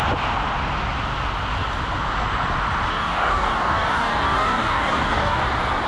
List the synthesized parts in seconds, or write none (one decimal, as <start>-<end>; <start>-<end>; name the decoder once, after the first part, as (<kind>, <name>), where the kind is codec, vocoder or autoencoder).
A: 2.9-5.5 (codec, DAC)

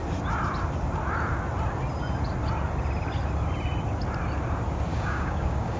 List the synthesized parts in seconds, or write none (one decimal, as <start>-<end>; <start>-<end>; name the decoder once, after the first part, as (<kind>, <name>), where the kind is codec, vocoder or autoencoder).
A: 4.9-5.8 (codec, DAC)

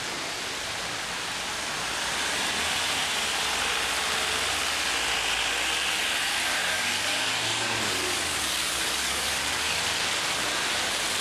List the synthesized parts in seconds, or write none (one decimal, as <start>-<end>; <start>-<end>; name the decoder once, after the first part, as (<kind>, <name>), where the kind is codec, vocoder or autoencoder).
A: 6.6-9.8 (codec, DAC)

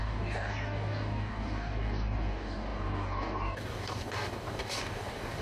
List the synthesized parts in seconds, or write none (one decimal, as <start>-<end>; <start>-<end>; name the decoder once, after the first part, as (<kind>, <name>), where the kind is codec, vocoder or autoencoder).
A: 0.0-5.4 (codec, DAC)

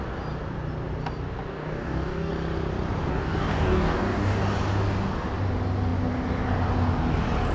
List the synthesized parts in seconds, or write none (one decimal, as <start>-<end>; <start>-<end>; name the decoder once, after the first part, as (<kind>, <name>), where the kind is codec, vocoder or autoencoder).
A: 1.5-2.3 (codec, DAC); 3.1-4.4